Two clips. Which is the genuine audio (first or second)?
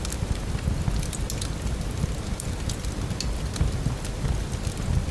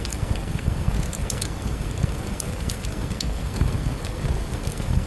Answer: first